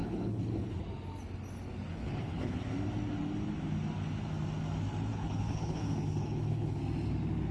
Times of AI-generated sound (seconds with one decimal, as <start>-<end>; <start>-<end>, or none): 0.0-0.8; 1.9-2.6; 5.1-6.8